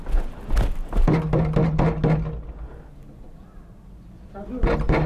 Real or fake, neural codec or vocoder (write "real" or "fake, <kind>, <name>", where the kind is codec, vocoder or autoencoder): real